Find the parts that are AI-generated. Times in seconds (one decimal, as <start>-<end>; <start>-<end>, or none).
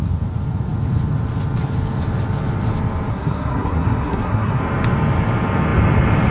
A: 3.1-4.6